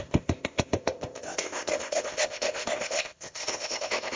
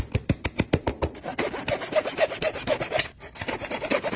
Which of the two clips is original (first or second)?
second